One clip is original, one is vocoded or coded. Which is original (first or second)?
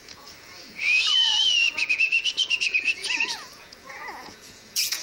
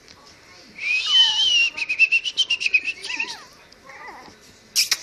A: second